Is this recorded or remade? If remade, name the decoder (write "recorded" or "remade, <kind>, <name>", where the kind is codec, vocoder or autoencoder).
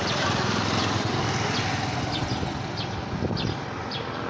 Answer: recorded